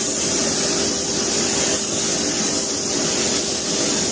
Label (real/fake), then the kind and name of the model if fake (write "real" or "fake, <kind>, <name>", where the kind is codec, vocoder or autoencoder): real